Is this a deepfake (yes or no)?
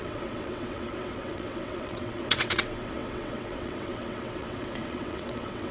yes